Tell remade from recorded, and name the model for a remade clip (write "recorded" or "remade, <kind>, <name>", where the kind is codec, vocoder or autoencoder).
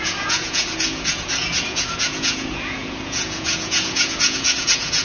remade, vocoder, Vocos